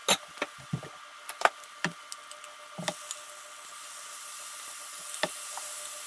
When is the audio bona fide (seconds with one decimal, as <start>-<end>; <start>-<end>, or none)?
0.0-6.1